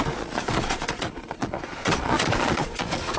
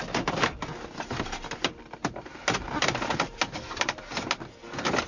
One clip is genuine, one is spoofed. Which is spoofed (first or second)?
first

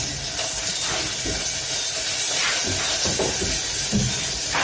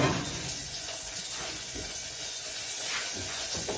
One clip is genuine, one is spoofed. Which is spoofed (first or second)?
second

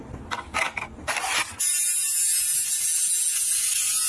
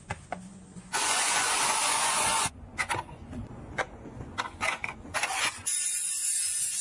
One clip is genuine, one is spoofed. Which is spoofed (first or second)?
second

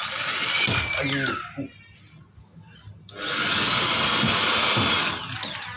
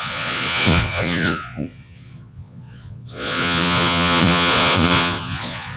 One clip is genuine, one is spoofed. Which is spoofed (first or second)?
second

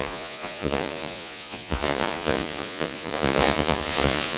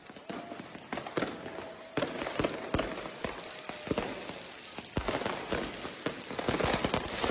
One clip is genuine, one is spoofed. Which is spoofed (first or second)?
first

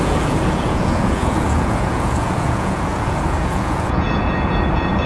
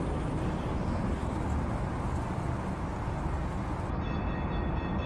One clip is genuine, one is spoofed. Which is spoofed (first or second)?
first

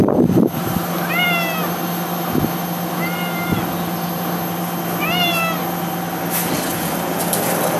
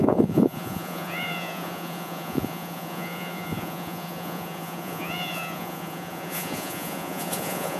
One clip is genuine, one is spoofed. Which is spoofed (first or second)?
second